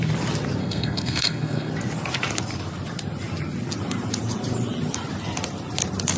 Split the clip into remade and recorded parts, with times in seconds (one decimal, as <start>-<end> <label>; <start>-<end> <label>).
0.0-0.6 recorded; 0.6-1.7 remade; 1.7-6.2 recorded